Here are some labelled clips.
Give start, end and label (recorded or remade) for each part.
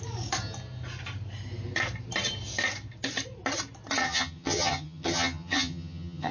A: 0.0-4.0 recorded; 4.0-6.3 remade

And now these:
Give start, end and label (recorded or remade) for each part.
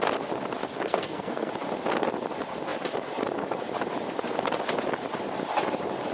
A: 0.0-0.6 recorded; 0.6-1.5 remade; 1.5-6.1 recorded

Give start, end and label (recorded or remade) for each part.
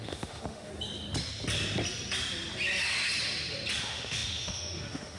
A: 0.0-0.7 remade; 0.7-3.8 recorded; 3.8-5.2 remade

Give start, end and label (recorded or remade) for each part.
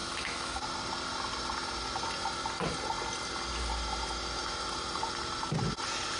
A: 0.0-0.6 remade; 0.6-6.2 recorded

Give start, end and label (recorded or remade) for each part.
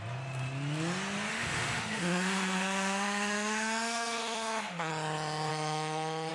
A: 0.0-1.3 recorded; 1.3-4.9 remade; 4.9-5.5 recorded; 5.5-6.3 remade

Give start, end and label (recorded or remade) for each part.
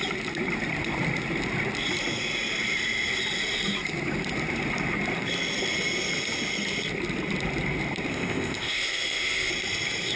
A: 0.0-8.1 recorded; 8.1-9.5 remade; 9.5-10.2 recorded